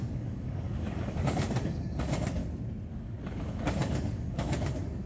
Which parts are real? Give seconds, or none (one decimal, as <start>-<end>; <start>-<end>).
2.4-2.9